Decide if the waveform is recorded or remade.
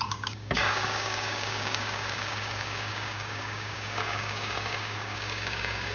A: remade